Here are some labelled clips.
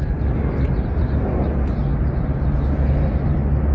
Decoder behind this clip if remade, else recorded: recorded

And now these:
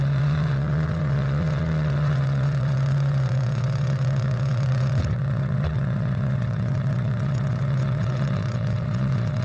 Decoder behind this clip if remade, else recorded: remade, vocoder, WaveNeXt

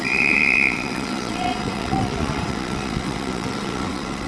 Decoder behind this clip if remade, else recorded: remade, vocoder, WaveNeXt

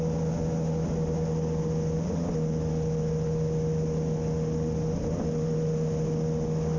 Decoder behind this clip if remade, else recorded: recorded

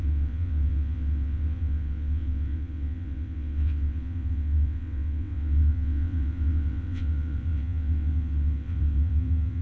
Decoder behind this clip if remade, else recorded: remade, vocoder, WaveNeXt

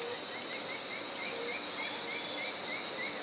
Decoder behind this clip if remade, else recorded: recorded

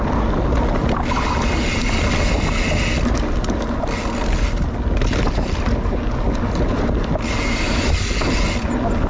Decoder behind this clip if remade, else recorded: recorded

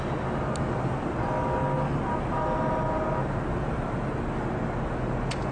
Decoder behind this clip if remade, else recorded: recorded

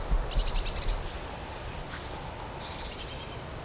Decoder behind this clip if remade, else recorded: recorded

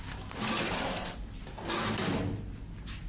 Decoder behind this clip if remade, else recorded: recorded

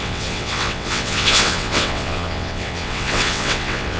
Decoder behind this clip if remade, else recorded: remade, vocoder, WaveNeXt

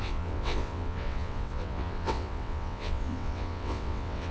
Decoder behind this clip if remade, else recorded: remade, vocoder, WaveNeXt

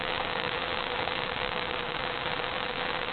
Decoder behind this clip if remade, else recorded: remade, vocoder, WaveNeXt